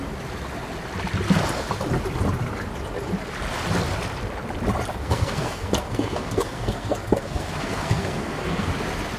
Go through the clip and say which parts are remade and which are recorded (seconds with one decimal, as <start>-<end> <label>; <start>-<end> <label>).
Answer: 0.0-4.9 recorded; 4.9-8.7 remade; 8.7-9.2 recorded